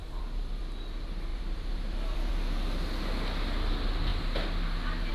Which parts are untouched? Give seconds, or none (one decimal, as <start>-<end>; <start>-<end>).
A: 0.6-1.3; 2.3-5.1